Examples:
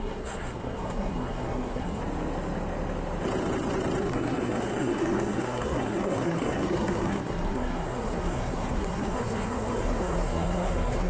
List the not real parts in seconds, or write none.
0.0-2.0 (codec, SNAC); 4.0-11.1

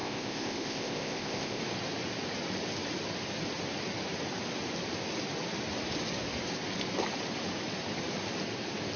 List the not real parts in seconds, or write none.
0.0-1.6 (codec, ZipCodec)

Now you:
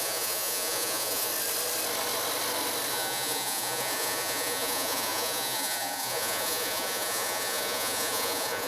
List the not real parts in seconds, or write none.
0.0-1.3 (vocoder, Vocos); 2.9-8.7

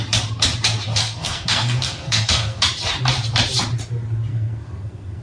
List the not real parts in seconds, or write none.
1.0-2.6 (codec, SNAC); 4.3-5.2

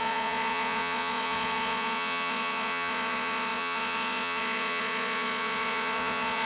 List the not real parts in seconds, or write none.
0.0-6.5 (vocoder, Vocos)

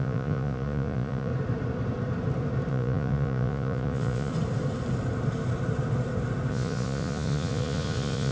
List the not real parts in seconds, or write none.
0.0-1.3 (vocoder, Vocos); 2.7-4.3; 6.5-8.3